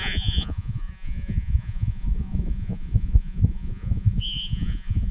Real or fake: fake